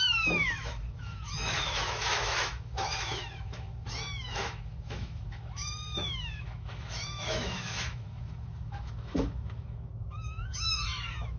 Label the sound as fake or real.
fake